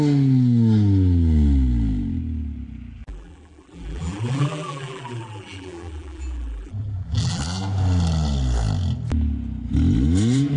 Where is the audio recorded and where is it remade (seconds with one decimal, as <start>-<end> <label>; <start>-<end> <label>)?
0.0-3.0 recorded; 3.0-7.4 remade; 7.4-10.6 recorded